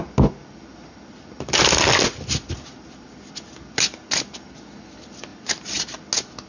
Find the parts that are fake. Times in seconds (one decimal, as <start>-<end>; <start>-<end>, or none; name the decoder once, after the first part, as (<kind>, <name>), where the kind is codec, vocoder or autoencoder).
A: none